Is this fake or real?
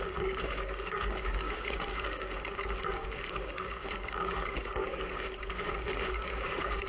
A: fake